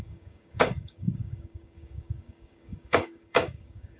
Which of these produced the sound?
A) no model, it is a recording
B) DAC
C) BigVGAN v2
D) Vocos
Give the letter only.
B